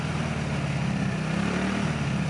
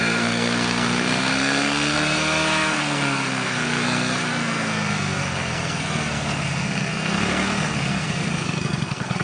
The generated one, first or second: second